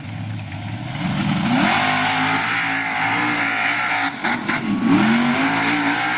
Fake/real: real